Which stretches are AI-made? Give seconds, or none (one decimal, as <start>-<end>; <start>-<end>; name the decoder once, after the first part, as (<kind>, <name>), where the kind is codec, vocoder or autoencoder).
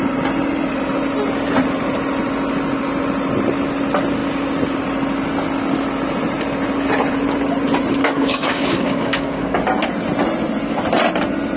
8.0-9.6 (codec, DAC)